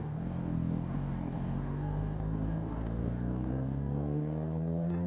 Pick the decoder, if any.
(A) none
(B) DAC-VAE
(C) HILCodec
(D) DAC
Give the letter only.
D